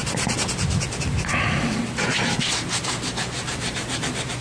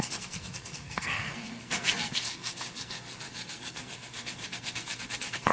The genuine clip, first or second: first